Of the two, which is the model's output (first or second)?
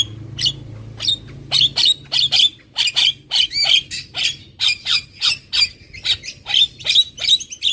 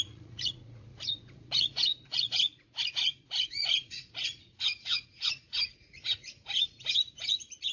second